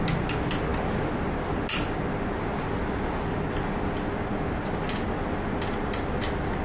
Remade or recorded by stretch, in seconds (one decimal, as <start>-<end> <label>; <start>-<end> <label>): 0.0-6.6 recorded

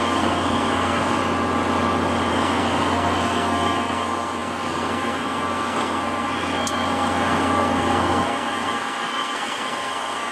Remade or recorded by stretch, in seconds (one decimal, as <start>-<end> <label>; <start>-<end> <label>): 0.0-1.2 remade; 1.2-2.3 recorded; 2.3-10.3 remade